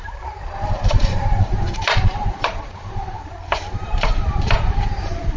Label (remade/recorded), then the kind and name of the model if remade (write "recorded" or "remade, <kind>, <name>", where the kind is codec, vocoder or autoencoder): remade, vocoder, BigVGAN v2